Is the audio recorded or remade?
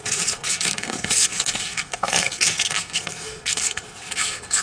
remade